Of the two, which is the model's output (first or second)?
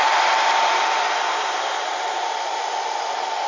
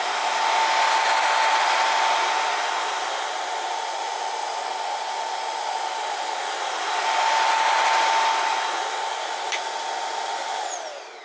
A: first